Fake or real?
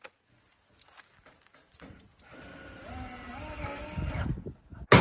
real